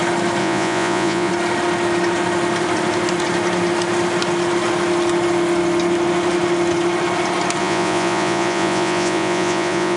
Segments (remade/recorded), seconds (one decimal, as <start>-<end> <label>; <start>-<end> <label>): 0.0-0.4 recorded; 0.4-1.3 remade; 1.3-7.6 recorded; 7.6-10.0 remade